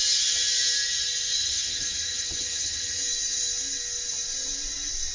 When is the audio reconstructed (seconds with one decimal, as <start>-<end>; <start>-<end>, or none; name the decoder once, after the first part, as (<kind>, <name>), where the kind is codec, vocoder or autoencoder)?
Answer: 1.4-3.0 (vocoder, HiFi-GAN)